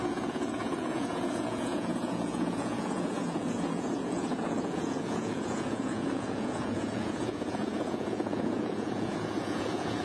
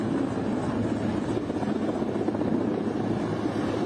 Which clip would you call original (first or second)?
second